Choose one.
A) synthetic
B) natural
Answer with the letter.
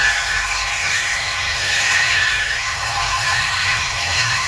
A